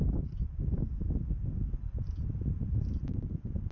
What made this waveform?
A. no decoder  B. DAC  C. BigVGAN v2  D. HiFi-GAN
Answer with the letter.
A